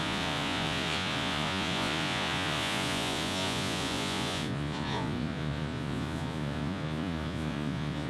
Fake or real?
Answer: fake